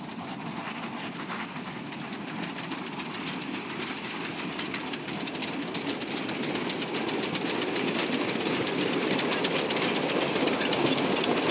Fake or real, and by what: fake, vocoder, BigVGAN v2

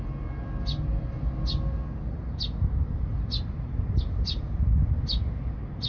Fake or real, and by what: real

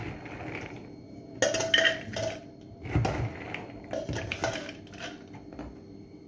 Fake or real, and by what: real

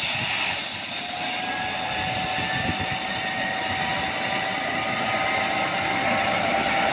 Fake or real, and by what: real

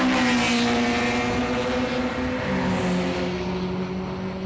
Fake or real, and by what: real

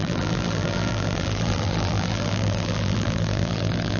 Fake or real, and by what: fake, vocoder, BigVGAN v2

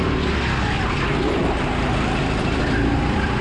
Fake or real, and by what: real